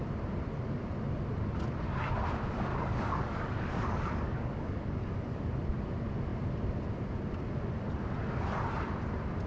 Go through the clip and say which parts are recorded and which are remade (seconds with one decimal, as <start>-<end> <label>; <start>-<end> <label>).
0.0-2.7 recorded; 2.7-5.4 remade; 5.4-9.5 recorded